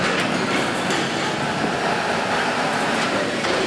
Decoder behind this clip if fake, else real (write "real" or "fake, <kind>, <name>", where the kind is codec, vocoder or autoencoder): real